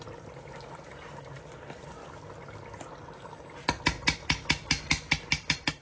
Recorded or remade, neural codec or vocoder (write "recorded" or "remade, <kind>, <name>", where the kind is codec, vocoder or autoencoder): recorded